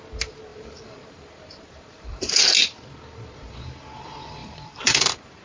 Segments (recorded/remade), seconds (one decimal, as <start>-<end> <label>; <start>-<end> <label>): 0.0-0.5 recorded; 0.5-2.4 remade; 2.4-4.4 recorded; 4.4-5.4 remade